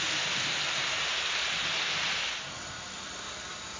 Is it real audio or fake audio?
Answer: real